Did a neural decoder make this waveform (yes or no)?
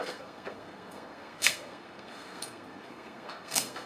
yes